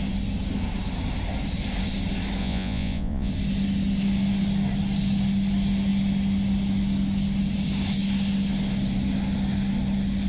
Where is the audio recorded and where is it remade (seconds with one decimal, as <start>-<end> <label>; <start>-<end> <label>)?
0.0-2.4 recorded; 2.4-3.3 remade; 3.3-10.3 recorded